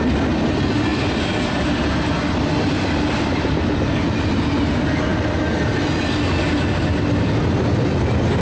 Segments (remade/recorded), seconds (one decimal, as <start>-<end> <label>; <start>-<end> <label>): 0.0-8.4 recorded